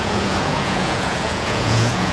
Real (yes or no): no